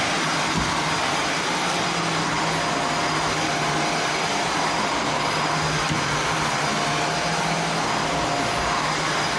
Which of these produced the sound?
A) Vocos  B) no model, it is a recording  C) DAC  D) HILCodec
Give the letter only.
B